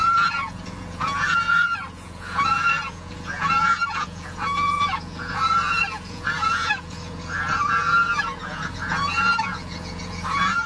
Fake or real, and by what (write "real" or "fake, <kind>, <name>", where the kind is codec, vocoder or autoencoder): fake, vocoder, Vocos